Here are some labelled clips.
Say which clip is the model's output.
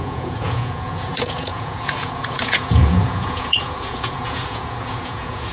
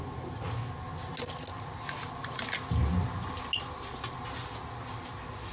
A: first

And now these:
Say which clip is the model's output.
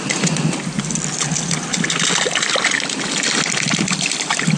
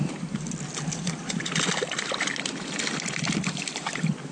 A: second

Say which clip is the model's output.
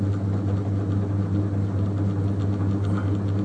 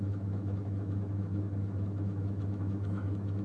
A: second